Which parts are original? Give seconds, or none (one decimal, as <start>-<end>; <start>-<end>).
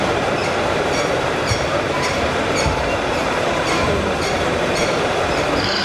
0.4-1.1